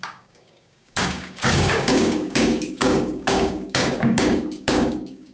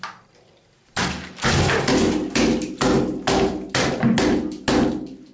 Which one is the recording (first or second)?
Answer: second